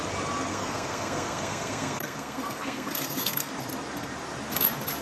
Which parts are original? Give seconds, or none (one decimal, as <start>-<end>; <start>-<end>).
0.0-0.5; 3.5-5.0